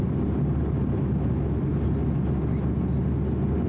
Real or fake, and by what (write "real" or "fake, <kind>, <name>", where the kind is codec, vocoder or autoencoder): real